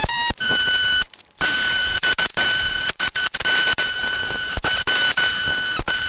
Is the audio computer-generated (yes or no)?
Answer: yes